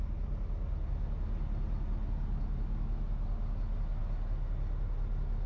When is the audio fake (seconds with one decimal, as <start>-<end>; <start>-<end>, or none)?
none